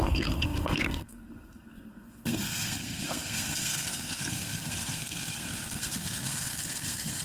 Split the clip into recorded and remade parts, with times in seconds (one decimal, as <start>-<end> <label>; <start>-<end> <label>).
0.0-7.2 remade